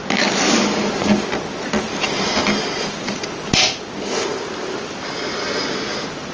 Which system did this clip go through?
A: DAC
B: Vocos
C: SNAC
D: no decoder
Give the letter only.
D